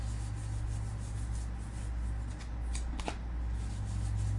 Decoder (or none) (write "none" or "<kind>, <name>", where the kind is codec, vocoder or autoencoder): none